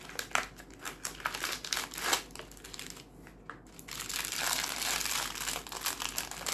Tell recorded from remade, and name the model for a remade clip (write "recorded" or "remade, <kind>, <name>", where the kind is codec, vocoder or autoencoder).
recorded